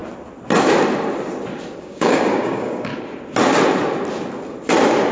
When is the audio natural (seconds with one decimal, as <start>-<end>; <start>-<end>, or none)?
0.0-1.8; 2.9-5.1